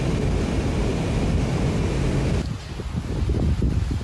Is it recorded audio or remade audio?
recorded